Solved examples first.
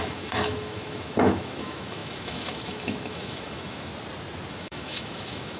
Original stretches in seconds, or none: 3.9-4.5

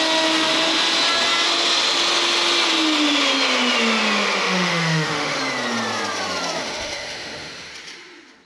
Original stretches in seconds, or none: 0.0-4.4; 5.4-6.6; 7.7-8.5

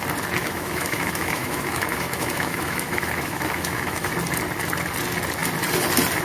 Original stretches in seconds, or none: 0.0-0.4; 4.1-6.2

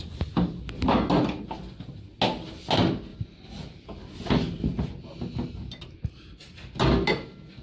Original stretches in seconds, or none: 0.0-7.6

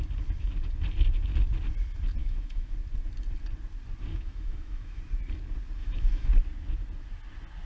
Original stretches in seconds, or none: 0.0-2.2; 2.7-4.1; 5.0-5.8; 6.3-7.7

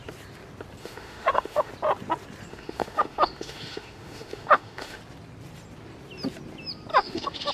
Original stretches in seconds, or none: 0.0-0.8; 1.7-2.5; 5.0-6.9

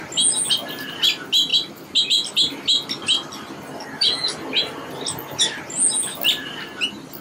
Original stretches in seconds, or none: 0.0-7.2